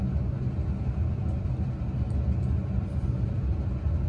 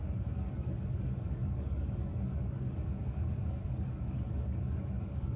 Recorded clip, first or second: first